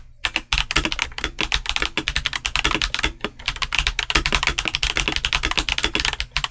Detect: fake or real real